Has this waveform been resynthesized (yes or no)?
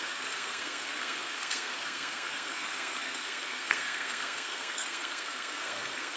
yes